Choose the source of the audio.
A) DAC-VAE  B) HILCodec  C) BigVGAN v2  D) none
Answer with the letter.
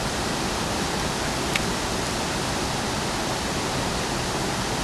D